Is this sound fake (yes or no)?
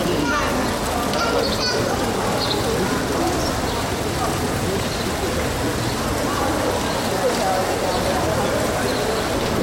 no